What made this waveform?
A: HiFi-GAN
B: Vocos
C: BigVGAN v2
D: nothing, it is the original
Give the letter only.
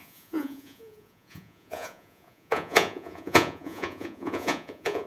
B